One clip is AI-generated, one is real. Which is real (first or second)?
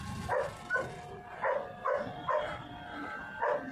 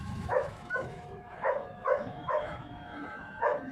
first